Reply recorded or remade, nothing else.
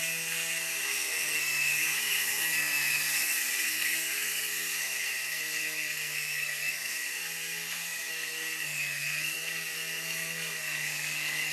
remade